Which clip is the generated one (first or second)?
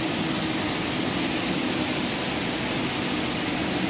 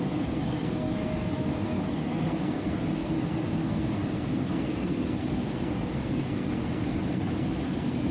second